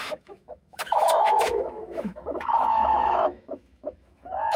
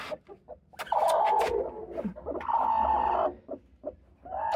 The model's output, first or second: first